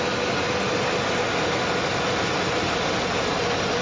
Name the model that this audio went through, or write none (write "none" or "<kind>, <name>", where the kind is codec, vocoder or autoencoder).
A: none